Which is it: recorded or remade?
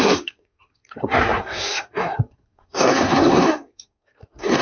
remade